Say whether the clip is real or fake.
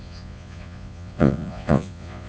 fake